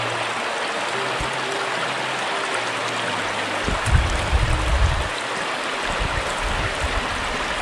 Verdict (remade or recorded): recorded